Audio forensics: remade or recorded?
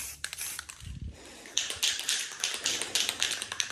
remade